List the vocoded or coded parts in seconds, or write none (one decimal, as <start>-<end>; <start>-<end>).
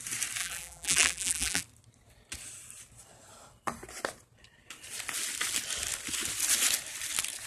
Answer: 0.4-1.6